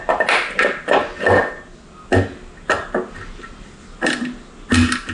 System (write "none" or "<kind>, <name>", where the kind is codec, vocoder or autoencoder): none